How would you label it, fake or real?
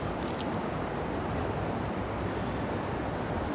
real